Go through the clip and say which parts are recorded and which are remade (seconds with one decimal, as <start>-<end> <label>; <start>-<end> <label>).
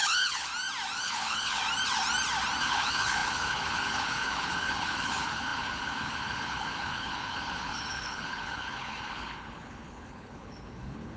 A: 0.0-0.5 remade; 0.5-1.0 recorded; 1.0-1.6 remade; 1.6-2.6 recorded; 2.6-11.2 remade